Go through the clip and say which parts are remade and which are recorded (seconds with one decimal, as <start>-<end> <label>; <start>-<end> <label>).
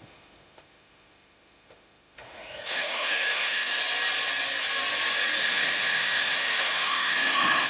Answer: 0.0-3.8 remade; 3.8-5.4 recorded; 5.4-7.7 remade